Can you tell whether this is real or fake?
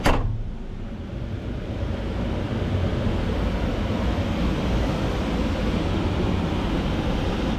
real